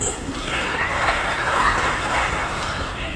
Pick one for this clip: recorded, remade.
remade